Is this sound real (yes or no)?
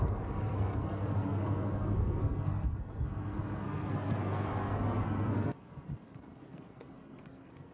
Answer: no